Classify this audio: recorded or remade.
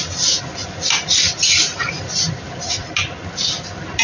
recorded